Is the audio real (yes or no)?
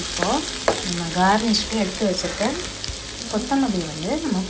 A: yes